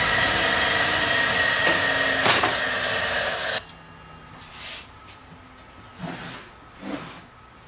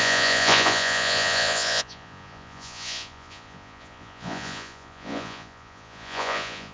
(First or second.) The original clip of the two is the first